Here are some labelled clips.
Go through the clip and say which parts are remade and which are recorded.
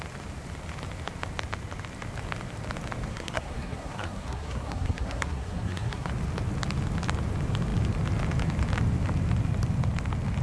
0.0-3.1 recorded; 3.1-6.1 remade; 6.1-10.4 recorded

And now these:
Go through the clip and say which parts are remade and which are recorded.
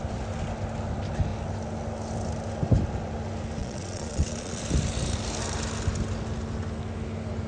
0.0-3.6 recorded; 3.6-4.6 remade; 4.6-7.5 recorded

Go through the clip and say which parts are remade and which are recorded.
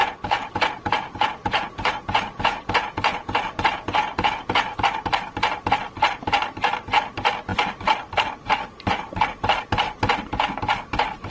0.0-4.8 remade; 4.8-11.3 recorded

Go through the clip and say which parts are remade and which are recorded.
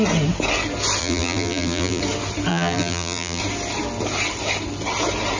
0.0-1.0 recorded; 1.0-2.0 remade; 2.0-2.5 recorded; 2.5-3.4 remade; 3.4-5.4 recorded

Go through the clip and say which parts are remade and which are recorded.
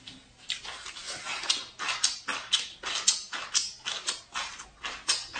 0.0-5.4 recorded